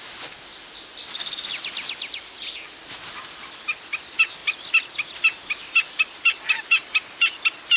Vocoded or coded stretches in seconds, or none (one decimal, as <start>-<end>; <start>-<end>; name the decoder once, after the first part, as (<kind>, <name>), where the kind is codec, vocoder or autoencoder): none